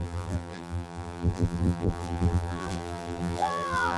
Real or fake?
fake